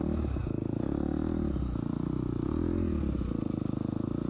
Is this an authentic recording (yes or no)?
yes